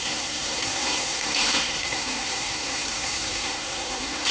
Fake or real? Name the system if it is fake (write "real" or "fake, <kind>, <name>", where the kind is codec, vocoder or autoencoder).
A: fake, codec, SNAC